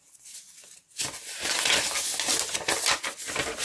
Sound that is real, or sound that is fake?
real